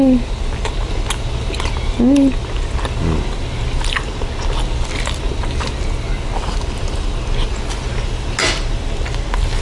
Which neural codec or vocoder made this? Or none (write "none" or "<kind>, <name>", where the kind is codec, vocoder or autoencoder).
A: none